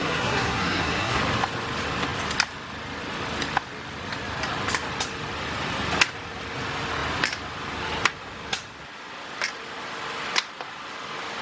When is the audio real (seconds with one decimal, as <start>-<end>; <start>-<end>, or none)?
1.2-11.4